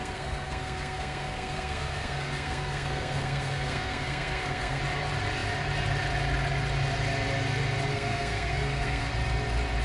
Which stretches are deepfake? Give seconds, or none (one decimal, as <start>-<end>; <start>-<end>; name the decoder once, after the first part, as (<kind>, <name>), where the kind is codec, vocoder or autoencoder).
0.0-4.8 (codec, SNAC); 7.9-9.1